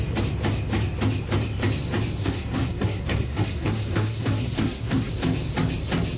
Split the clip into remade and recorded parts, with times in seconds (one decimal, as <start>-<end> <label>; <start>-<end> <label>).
0.0-2.2 recorded; 2.2-5.1 remade; 5.1-6.2 recorded